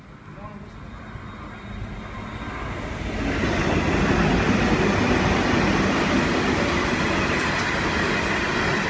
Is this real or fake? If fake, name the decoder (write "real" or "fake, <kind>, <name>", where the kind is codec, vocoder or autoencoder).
real